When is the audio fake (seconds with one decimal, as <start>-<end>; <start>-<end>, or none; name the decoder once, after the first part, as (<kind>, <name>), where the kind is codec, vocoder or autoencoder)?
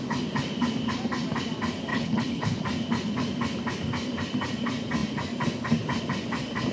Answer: 1.9-2.6 (codec, HILCodec)